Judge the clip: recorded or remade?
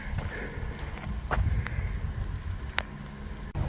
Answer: recorded